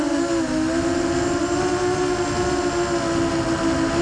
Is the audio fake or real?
real